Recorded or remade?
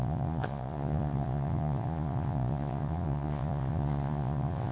remade